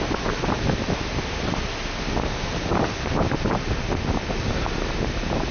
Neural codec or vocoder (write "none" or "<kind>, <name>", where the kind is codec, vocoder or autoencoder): none